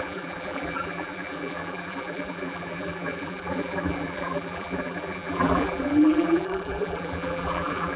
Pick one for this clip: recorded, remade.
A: remade